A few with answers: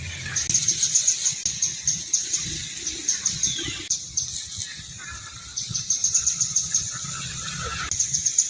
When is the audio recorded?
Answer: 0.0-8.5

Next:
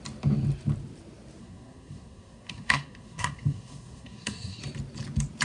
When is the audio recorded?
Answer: 0.0-1.4; 4.6-5.4

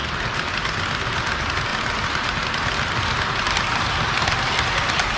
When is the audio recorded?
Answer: 0.0-5.2

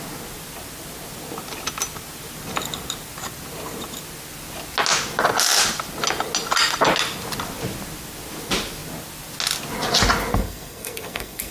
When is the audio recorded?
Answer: 0.0-10.3